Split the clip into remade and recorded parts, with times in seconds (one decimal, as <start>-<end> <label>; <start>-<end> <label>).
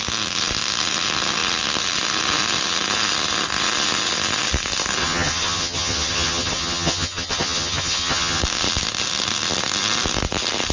0.0-5.0 recorded; 5.0-8.4 remade; 8.4-10.7 recorded